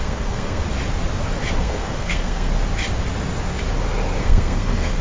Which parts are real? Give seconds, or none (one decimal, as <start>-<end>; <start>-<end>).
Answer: 0.6-1.6; 2.5-4.2